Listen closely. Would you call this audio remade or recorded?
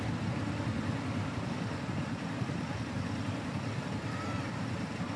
recorded